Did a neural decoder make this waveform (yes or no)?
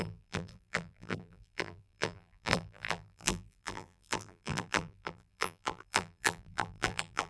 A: yes